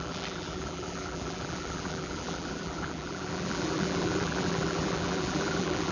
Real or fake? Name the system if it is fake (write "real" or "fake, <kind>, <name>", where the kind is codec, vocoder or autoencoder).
fake, vocoder, BigVGAN v2